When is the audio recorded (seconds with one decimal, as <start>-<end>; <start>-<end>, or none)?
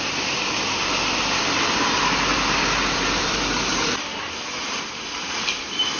0.0-2.3